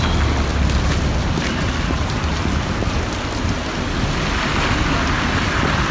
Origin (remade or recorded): recorded